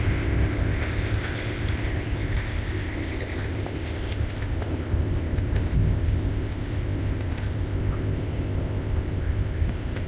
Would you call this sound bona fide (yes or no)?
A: no